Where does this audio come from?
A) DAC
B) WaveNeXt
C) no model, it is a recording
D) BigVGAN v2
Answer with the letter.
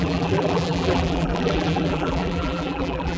D